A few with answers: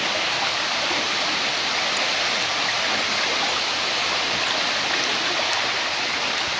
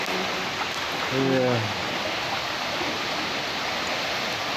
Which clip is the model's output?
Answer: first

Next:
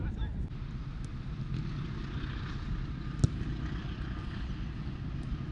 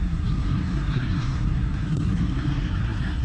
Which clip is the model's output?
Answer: second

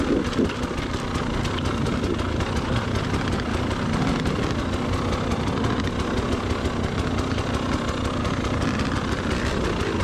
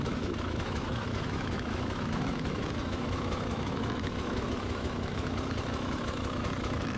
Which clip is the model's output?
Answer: second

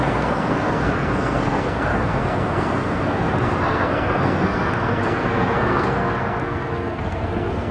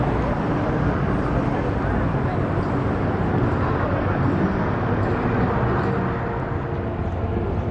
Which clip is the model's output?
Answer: first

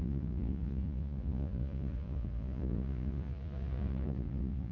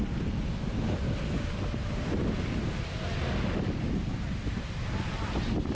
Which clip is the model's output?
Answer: first